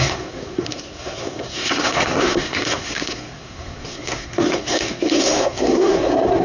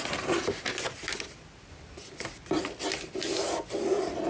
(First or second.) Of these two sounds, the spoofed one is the first